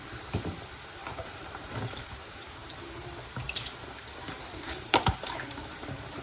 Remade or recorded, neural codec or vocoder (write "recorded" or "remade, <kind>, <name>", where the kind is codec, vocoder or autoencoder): remade, vocoder, BigVGAN v2